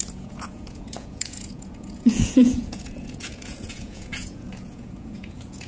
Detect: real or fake fake